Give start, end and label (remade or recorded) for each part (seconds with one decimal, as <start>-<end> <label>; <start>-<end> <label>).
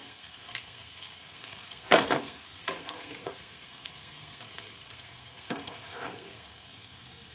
0.0-7.3 remade